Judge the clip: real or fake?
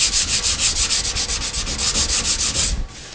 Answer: real